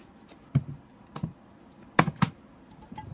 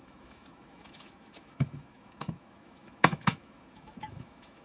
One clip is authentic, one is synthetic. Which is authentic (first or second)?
first